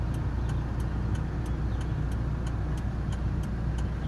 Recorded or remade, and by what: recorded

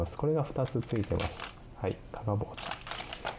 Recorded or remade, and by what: recorded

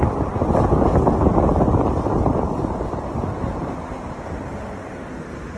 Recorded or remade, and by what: recorded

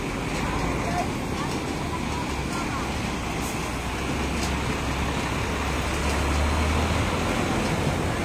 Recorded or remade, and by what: recorded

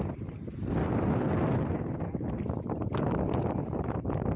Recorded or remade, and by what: recorded